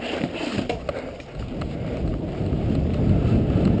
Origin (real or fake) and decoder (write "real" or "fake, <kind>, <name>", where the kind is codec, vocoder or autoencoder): real